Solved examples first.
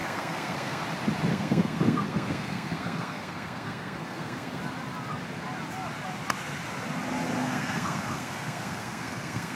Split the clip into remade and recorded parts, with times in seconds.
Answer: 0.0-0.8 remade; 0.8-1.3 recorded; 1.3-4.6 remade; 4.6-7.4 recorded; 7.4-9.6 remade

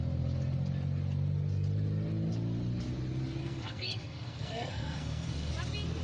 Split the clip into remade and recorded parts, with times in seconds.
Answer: 0.0-3.4 recorded; 3.4-5.5 remade; 5.5-6.0 recorded

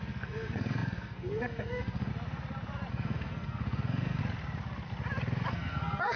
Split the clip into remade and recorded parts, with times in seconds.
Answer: 0.0-2.1 remade; 2.1-2.9 recorded; 2.9-4.2 remade; 4.2-5.5 recorded; 5.5-6.2 remade